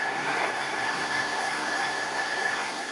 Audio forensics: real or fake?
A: fake